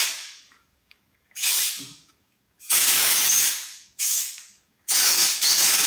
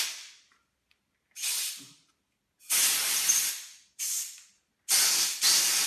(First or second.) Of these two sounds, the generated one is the first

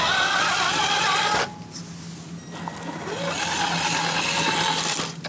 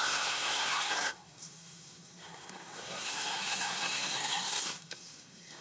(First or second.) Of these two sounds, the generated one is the second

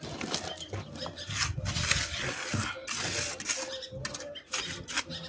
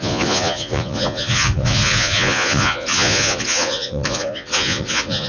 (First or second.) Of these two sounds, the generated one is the second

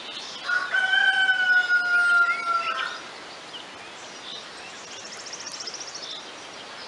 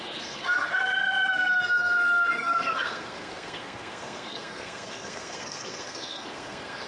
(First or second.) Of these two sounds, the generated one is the second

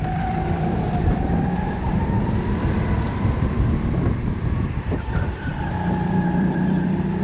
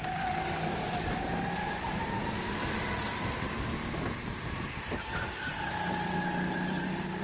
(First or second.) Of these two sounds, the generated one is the first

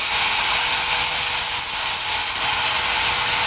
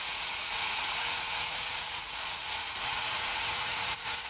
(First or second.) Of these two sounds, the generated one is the second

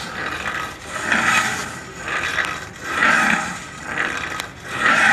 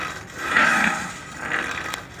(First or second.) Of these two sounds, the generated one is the first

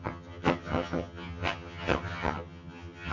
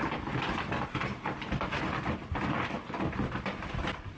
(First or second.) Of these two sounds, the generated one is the first